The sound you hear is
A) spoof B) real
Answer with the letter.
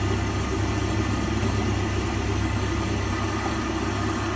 B